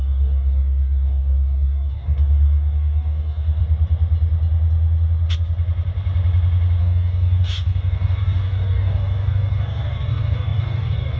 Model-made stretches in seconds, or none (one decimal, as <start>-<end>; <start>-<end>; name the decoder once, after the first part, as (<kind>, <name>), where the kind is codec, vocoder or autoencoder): 0.0-3.6 (codec, DAC); 6.8-11.2